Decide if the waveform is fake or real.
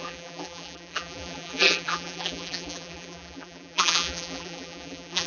fake